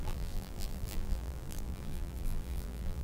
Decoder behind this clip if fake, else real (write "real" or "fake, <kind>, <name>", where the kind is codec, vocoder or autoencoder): fake, vocoder, BigVGAN v2